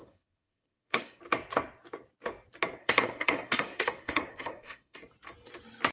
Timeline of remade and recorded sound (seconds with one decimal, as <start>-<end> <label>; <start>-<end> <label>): 0.0-1.2 remade; 1.2-2.8 recorded; 2.8-5.0 remade; 5.0-5.9 recorded